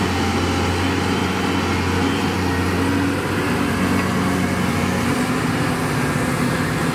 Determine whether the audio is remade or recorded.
recorded